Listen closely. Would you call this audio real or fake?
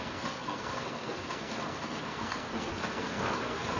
fake